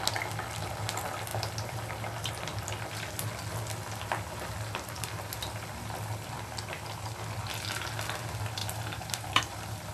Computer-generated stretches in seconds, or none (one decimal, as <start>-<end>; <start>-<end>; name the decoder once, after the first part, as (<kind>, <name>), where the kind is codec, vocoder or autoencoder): 1.3-2.3 (vocoder, BigVGAN v2); 8.6-9.4